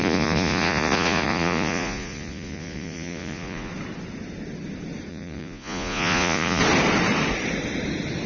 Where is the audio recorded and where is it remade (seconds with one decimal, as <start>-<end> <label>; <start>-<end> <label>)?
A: 0.0-3.7 remade; 3.7-5.1 recorded; 5.1-6.6 remade; 6.6-8.3 recorded